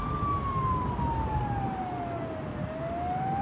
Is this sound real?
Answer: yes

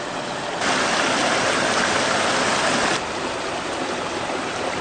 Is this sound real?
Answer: yes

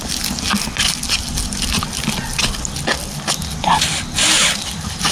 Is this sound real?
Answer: yes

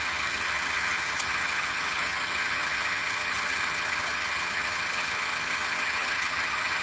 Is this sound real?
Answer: no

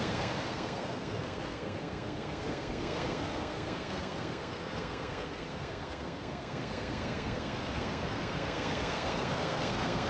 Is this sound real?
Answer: no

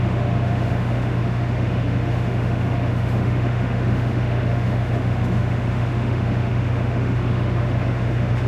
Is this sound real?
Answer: no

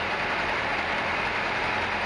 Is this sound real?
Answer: yes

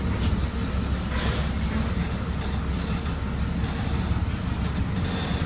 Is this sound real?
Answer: yes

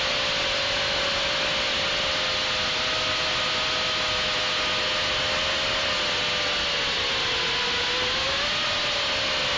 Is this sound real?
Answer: yes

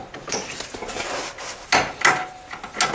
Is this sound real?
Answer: yes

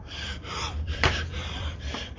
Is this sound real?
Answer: no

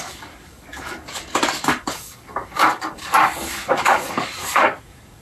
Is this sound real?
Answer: no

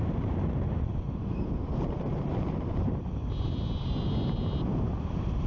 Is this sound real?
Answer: no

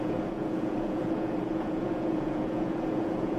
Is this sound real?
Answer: no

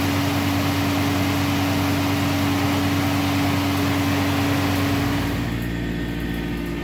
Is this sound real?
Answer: yes